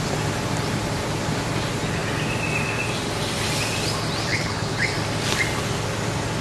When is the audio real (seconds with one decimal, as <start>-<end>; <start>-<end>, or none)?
0.0-4.3; 4.9-6.4